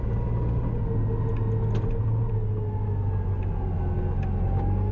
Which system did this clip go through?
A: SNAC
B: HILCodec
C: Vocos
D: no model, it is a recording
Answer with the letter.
D